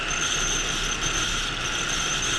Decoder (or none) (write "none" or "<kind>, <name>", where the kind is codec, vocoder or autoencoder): none